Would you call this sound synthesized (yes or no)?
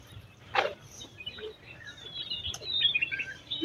yes